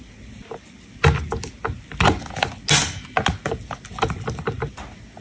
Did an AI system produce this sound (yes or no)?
no